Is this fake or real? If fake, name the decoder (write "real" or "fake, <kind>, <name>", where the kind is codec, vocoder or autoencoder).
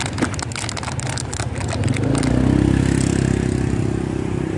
real